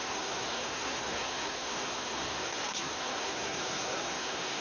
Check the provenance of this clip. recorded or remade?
remade